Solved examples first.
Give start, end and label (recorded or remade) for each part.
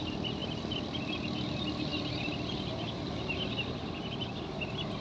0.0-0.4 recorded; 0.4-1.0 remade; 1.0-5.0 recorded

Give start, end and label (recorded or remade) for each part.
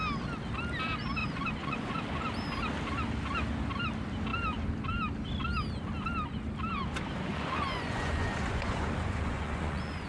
0.0-1.2 recorded; 1.2-2.0 remade; 2.0-7.3 recorded; 7.3-10.1 remade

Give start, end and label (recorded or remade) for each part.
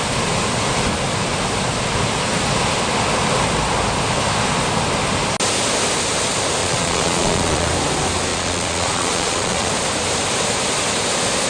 0.0-6.6 recorded; 6.6-7.7 remade; 7.7-8.3 recorded; 8.3-9.7 remade; 9.7-11.5 recorded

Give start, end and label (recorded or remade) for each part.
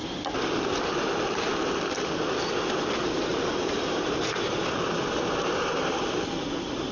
0.0-3.3 recorded; 3.3-6.9 remade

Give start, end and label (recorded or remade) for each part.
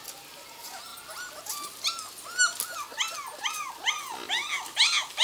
0.0-5.2 recorded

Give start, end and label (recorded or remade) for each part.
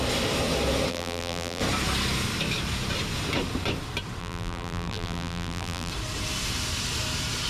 0.0-0.9 recorded; 0.9-1.6 remade; 1.6-4.2 recorded; 4.2-5.9 remade; 5.9-7.5 recorded